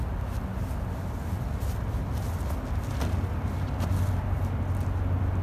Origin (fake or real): real